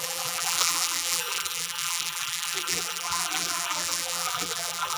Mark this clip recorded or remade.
remade